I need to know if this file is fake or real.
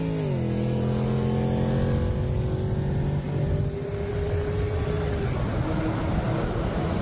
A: real